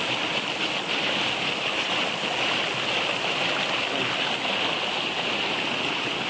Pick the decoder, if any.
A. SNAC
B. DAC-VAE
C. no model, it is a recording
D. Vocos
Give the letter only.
C